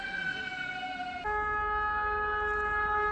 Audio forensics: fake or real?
real